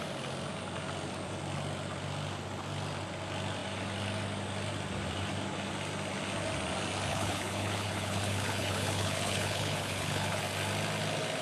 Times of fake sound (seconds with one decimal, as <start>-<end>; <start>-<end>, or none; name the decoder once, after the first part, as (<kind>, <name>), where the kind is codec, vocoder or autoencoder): 7.1-10.4 (codec, HILCodec)